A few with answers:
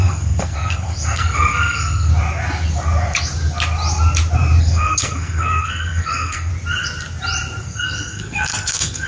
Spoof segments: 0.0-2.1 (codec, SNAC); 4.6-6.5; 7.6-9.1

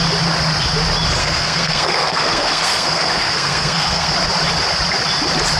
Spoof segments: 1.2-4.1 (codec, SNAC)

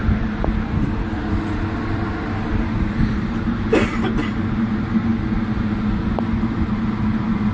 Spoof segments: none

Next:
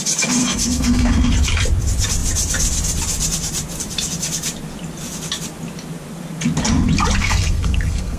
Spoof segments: 0.4-1.3 (codec, SNAC); 7.2-8.2